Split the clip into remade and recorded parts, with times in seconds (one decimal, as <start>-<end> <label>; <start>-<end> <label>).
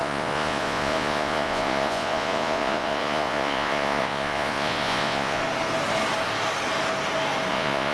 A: 0.0-5.4 remade; 5.4-7.5 recorded; 7.5-7.9 remade